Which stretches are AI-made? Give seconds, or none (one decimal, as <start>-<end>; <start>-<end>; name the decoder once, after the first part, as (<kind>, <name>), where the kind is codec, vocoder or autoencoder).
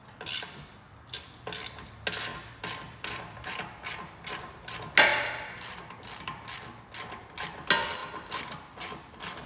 2.3-3.8 (vocoder, BigVGAN v2); 8.0-8.9